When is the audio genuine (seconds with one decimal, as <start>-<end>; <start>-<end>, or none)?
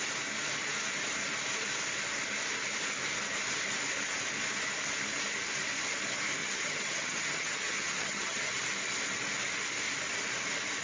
0.0-6.4; 8.5-10.8